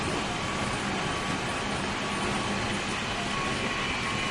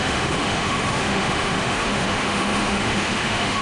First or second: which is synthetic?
second